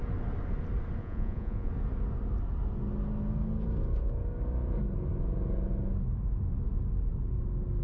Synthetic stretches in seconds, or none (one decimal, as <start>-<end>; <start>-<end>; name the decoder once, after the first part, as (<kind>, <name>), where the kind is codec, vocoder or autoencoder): 1.0-1.7 (vocoder, Vocos)